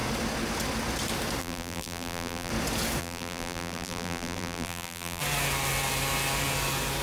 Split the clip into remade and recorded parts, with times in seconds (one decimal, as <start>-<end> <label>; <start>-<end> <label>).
0.0-1.4 recorded; 1.4-2.5 remade; 2.5-3.0 recorded; 3.0-5.2 remade; 5.2-7.0 recorded